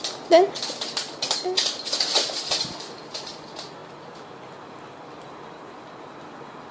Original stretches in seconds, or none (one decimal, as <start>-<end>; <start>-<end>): 0.0-6.7